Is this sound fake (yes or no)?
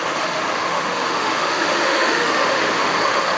yes